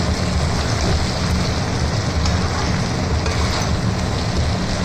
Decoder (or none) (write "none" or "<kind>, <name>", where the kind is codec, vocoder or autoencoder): none